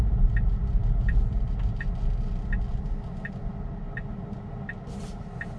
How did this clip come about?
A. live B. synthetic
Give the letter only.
A